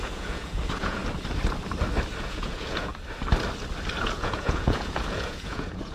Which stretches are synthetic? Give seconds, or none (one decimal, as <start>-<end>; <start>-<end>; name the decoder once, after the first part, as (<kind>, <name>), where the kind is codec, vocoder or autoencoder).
0.0-1.0 (vocoder, Vocos); 2.2-2.9; 4.0-5.9